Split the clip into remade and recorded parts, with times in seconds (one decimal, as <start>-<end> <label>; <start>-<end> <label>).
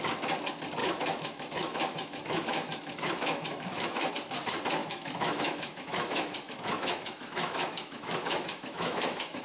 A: 0.0-0.8 recorded; 0.8-4.1 remade; 4.1-4.8 recorded; 4.8-9.4 remade